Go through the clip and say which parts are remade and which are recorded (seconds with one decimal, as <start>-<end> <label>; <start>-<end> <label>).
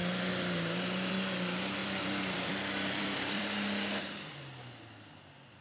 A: 0.0-1.1 remade; 1.1-1.8 recorded; 1.8-4.4 remade; 4.4-5.6 recorded